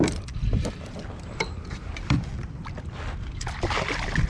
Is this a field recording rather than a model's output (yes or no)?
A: yes